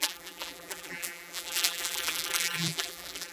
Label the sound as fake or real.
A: fake